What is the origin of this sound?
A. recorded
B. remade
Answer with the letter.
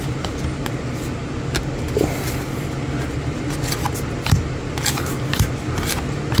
A